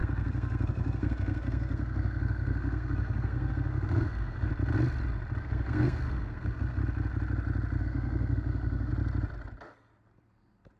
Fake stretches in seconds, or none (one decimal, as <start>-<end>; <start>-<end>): 0.0-4.5; 5.4-6.8; 7.8-8.9